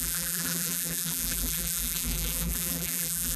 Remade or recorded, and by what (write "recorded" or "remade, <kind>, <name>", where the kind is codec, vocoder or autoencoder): remade, vocoder, BigVGAN v2